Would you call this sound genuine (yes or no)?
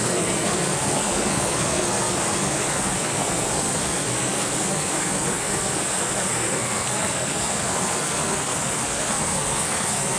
no